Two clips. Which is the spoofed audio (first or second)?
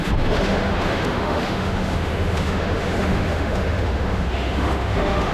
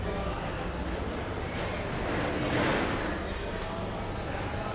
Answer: first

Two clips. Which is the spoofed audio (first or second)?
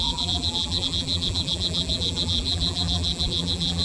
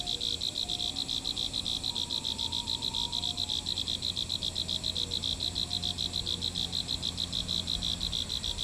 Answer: first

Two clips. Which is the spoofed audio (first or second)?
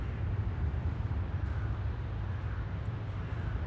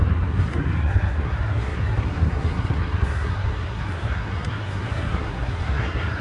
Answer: second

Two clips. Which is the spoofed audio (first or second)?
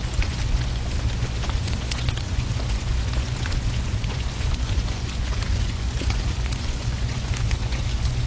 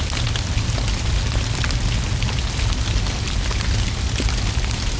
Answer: first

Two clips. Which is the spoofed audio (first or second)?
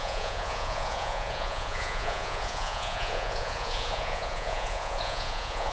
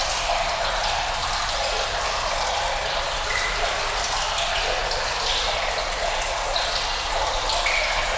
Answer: first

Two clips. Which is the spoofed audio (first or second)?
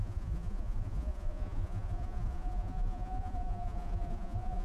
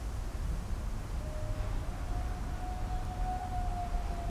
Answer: first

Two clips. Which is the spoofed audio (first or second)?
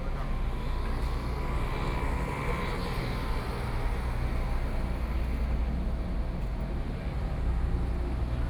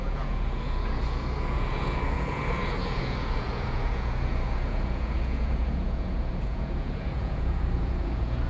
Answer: second